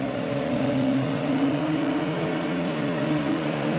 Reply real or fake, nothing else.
fake